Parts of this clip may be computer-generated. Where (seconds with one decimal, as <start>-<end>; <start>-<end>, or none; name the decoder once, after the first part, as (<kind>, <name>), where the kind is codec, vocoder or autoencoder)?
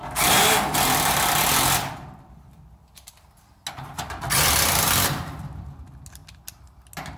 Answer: none